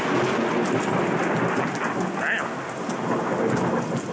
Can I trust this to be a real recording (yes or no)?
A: yes